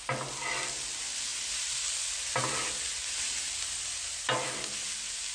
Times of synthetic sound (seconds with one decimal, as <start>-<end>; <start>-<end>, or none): none